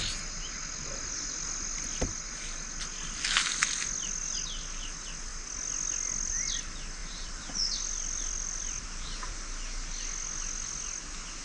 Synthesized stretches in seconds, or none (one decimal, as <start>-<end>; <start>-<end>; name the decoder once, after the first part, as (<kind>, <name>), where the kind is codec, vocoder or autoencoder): 7.0-9.3 (vocoder, BigVGAN v2)